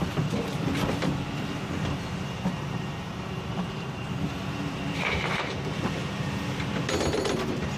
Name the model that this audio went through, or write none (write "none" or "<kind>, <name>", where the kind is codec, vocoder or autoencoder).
vocoder, BigVGAN v2